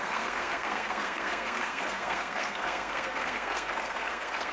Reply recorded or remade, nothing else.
remade